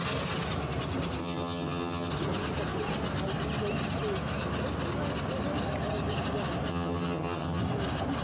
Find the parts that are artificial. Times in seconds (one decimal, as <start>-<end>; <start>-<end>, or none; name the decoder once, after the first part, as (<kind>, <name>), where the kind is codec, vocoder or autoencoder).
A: 1.2-2.1 (vocoder, HiFi-GAN); 6.7-7.6